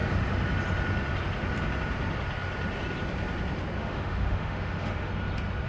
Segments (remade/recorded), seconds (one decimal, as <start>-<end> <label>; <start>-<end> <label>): 0.0-3.8 recorded; 3.8-5.1 remade; 5.1-5.7 recorded